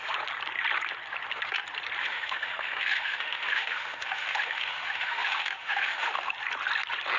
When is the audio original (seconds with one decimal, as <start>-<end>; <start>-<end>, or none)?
0.0-2.0; 6.3-7.2